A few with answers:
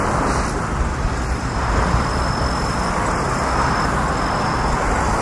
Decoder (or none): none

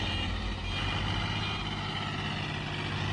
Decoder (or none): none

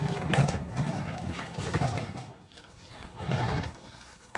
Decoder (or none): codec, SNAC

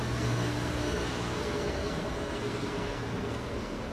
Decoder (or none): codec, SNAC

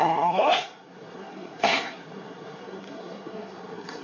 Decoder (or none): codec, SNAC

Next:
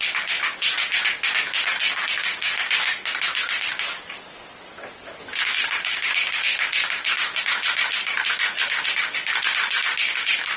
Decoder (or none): none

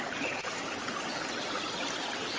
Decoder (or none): none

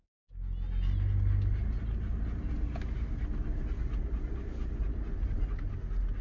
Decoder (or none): none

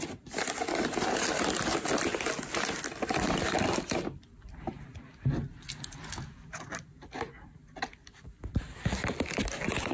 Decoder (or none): none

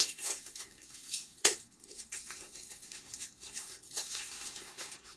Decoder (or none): codec, SNAC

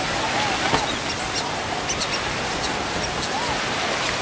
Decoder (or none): none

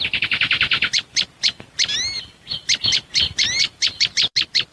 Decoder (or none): none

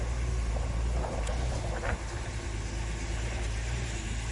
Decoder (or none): none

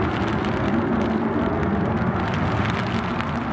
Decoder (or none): none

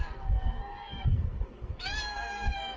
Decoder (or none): codec, SNAC